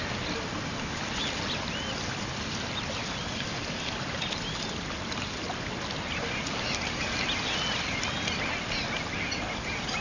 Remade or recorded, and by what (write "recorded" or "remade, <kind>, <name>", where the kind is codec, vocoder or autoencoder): recorded